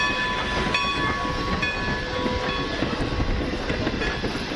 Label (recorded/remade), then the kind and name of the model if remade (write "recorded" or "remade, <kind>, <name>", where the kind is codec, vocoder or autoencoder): recorded